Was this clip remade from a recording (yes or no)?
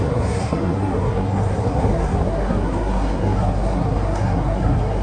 yes